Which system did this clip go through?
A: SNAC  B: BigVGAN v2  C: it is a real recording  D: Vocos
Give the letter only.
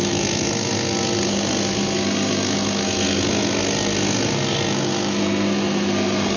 A